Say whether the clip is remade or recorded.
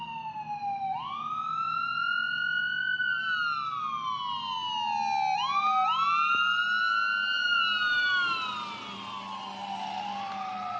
recorded